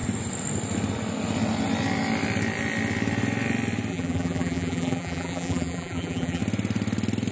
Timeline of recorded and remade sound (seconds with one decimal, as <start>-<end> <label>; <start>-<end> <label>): 0.0-3.9 recorded; 3.9-6.4 remade; 6.4-7.3 recorded